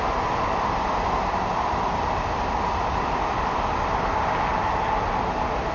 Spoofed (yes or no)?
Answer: no